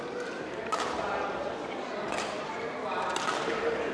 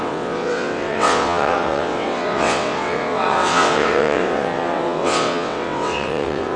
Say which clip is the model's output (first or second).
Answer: second